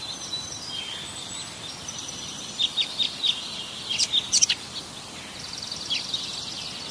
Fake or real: fake